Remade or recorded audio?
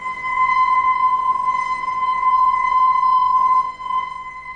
remade